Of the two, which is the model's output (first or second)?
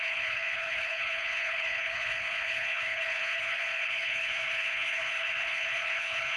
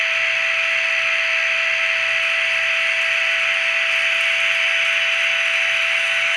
first